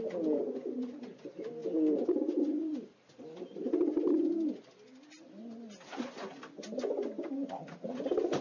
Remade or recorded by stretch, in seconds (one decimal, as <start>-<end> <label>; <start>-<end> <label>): 0.0-8.4 recorded